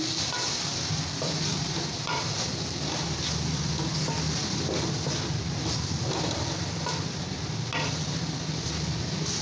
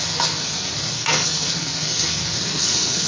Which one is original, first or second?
first